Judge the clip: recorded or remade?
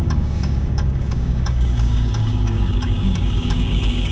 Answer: remade